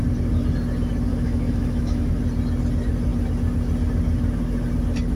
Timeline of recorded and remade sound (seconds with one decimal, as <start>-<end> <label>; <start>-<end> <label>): 0.0-1.1 recorded; 1.1-2.1 remade; 2.1-5.2 recorded